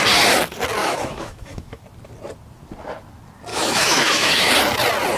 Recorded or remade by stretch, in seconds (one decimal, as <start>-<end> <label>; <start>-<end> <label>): 0.0-0.8 recorded; 0.8-1.8 remade; 1.8-3.5 recorded; 3.5-4.5 remade; 4.5-5.2 recorded